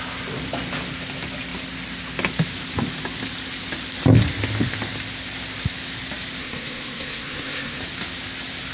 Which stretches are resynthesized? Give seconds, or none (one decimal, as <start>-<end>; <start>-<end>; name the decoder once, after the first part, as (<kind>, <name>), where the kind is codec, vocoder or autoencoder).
6.4-7.8 (codec, SNAC)